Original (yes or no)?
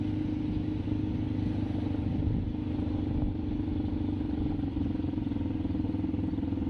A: yes